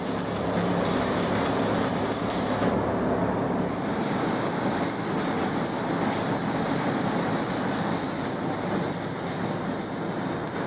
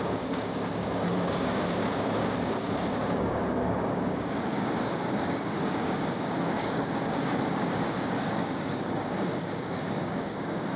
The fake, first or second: second